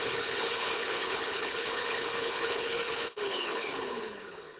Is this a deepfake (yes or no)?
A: yes